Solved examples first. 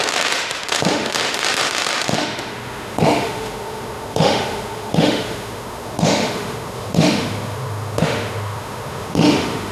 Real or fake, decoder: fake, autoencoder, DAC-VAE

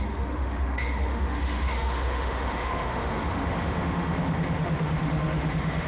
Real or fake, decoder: fake, autoencoder, DAC-VAE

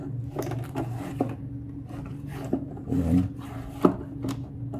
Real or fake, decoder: real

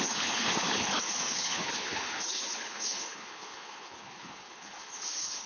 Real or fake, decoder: fake, codec, HILCodec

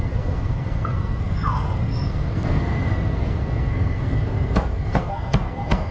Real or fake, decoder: fake, codec, SNAC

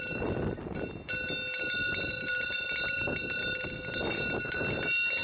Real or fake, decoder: real